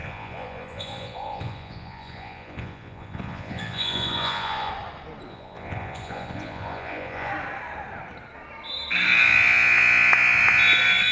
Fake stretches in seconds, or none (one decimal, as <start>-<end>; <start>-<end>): 0.0-4.7; 5.3-7.3